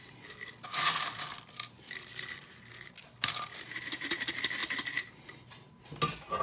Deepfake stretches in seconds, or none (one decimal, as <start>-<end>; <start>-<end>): none